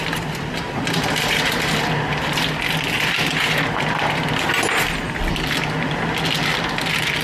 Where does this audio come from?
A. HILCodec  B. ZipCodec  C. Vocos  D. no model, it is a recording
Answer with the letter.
D